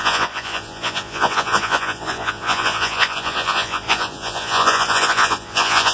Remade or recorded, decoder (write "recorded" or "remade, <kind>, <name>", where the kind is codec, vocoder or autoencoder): remade, vocoder, Vocos